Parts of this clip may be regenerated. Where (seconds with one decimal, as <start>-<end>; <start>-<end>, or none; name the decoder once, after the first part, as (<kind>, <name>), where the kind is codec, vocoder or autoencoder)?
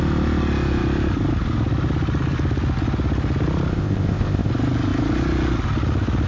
3.7-4.5 (codec, ZipCodec)